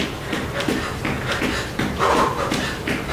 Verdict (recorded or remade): recorded